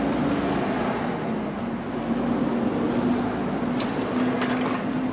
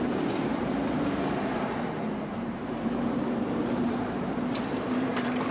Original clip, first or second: first